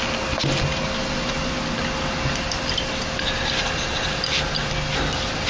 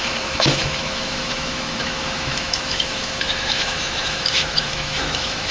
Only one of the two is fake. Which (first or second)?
second